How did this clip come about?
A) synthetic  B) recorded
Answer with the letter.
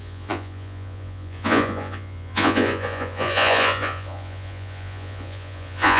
A